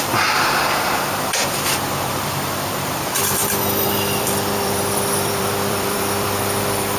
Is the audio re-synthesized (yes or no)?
yes